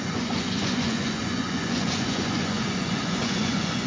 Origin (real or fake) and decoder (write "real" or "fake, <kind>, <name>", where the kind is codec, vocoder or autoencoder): fake, vocoder, Vocos